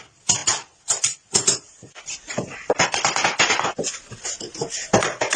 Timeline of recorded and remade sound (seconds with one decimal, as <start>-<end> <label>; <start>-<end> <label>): 0.0-0.4 recorded; 0.4-3.6 remade; 3.6-5.4 recorded